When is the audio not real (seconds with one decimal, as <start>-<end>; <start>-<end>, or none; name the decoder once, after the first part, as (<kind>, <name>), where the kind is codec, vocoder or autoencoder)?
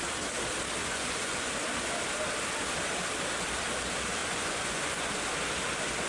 0.8-1.5 (vocoder, Vocos); 4.2-5.1